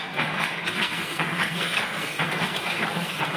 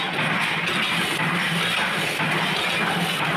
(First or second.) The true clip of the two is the second